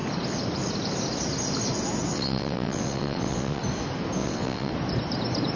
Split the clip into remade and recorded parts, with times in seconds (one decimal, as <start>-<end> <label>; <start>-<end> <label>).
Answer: 0.0-2.1 recorded; 2.1-3.6 remade; 3.6-4.2 recorded; 4.2-4.7 remade; 4.7-5.6 recorded